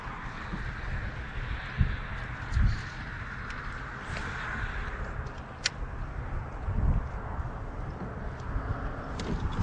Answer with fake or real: real